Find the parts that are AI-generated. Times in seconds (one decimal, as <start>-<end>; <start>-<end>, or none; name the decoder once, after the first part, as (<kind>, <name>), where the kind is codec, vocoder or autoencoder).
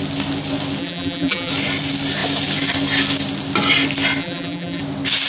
0.8-1.5 (vocoder, BigVGAN v2); 4.2-4.8